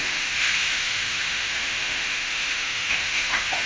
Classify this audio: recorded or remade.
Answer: remade